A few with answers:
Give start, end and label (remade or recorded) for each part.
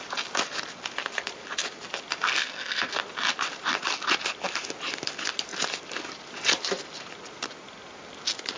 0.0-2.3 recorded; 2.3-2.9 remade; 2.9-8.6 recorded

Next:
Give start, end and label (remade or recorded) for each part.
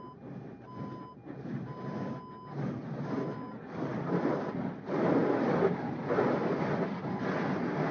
0.0-7.9 recorded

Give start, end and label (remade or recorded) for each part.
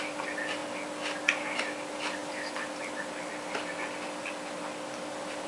0.0-5.5 recorded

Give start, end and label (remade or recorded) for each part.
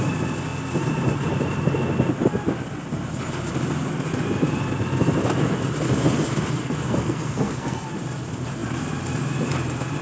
0.0-6.6 recorded; 6.6-7.9 remade; 7.9-10.0 recorded